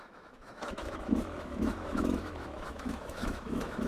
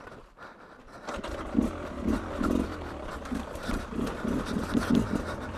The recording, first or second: second